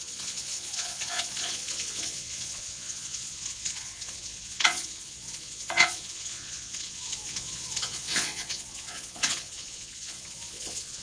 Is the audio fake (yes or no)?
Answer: yes